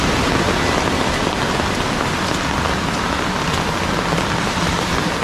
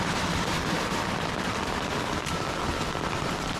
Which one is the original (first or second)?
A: first